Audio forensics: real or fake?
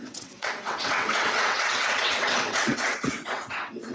fake